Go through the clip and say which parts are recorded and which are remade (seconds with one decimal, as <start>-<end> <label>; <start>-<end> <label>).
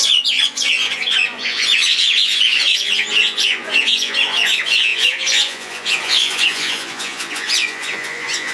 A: 0.0-8.5 remade